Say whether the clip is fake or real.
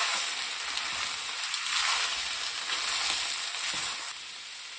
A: real